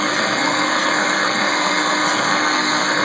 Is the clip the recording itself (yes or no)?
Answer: no